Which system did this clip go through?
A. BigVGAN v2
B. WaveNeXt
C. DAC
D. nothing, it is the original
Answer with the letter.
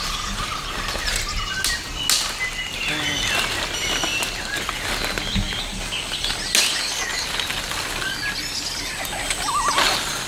D